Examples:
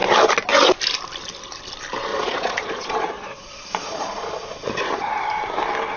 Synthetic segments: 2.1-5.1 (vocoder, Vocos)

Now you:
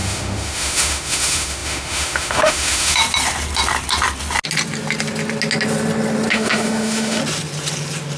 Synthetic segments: 0.0-3.0 (autoencoder, DAC-VAE); 6.3-7.2

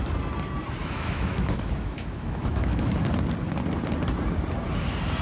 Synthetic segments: 0.8-2.9 (autoencoder, DAC-VAE)

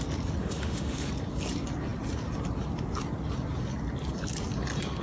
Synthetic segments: 0.4-1.1 (autoencoder, DAC-VAE)

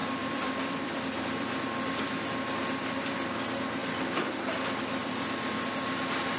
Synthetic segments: 0.0-3.3 (vocoder, BigVGAN v2); 3.8-4.3; 5.0-5.7

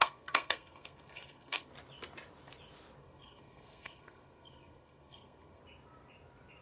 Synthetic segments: 0.0-1.7 (codec, SNAC); 3.0-5.6

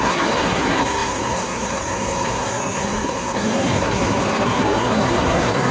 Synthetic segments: 0.0-5.7 (codec, SNAC)